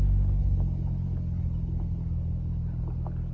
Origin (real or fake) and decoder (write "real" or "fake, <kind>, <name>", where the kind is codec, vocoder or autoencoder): real